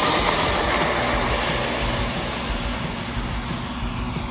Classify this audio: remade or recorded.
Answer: recorded